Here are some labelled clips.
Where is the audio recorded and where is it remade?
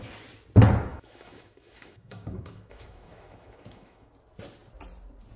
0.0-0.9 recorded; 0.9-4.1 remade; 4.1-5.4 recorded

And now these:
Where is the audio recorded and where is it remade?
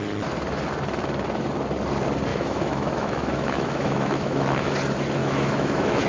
0.0-2.3 recorded; 2.3-4.7 remade; 4.7-5.2 recorded; 5.2-6.1 remade